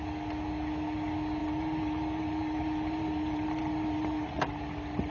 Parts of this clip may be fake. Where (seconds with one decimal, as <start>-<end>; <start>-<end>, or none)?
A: 1.4-4.5